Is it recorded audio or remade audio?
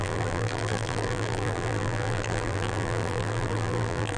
remade